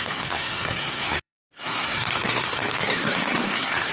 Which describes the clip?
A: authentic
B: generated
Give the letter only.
B